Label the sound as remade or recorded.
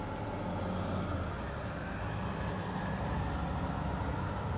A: recorded